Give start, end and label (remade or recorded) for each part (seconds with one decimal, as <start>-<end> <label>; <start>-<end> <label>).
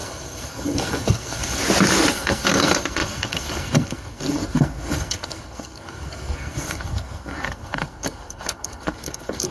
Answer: 0.0-1.6 remade; 1.6-2.1 recorded; 2.1-9.5 remade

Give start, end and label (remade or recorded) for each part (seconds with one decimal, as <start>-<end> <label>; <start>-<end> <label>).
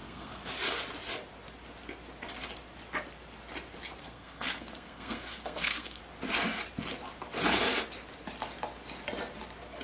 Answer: 0.0-0.5 remade; 0.5-4.0 recorded; 4.0-6.0 remade; 6.0-9.8 recorded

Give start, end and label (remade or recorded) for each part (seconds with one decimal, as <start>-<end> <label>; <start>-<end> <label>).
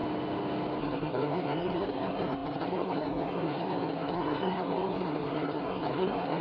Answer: 0.0-0.8 recorded; 0.8-6.4 remade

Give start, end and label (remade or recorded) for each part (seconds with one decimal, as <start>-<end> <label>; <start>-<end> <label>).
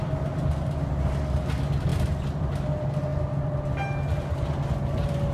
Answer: 0.0-5.3 recorded